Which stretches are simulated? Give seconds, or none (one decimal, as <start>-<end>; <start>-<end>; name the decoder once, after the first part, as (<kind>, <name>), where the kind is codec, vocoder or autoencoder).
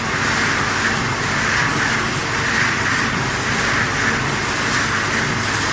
none